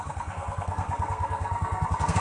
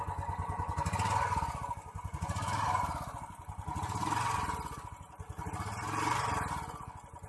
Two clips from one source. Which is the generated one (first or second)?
first